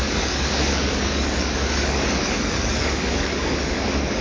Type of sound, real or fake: fake